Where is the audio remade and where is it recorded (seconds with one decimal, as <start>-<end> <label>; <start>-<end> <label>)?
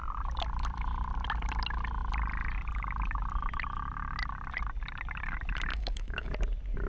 0.0-5.7 recorded; 5.7-6.3 remade; 6.3-6.9 recorded